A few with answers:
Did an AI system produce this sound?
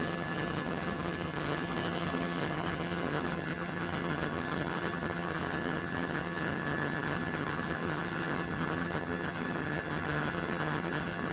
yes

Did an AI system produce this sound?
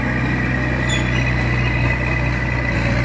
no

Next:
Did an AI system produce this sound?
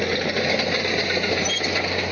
no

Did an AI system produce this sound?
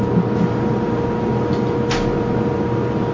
no